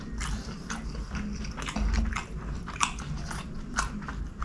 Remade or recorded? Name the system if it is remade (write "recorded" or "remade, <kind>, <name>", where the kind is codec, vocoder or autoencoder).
recorded